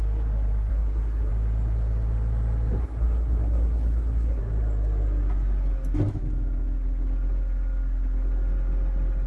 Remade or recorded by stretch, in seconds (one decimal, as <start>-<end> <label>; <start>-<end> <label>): 0.0-0.7 recorded; 0.7-1.3 remade; 1.3-2.8 recorded; 2.8-4.4 remade; 4.4-9.3 recorded